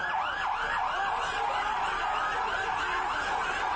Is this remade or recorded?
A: recorded